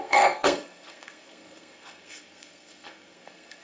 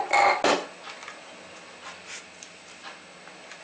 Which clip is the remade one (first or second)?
first